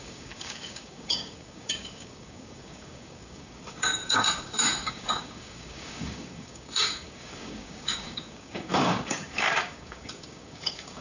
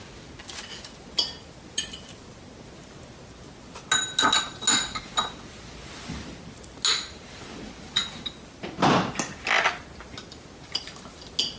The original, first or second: second